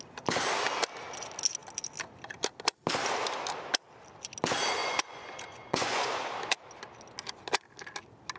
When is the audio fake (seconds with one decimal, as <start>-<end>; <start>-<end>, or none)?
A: 4.8-6.1